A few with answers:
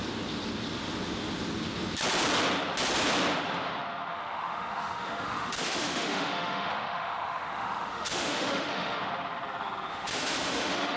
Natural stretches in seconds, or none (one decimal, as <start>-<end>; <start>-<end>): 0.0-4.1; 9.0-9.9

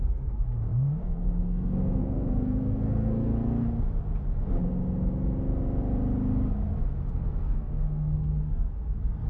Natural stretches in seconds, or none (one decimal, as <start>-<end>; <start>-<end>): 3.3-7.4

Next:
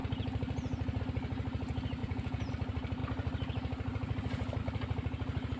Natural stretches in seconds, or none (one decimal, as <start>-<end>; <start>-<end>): 0.0-2.0; 2.5-5.6